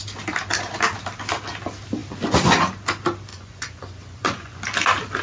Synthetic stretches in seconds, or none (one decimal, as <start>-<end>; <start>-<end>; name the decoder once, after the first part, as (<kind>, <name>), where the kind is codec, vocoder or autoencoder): 3.3-4.6 (vocoder, Vocos)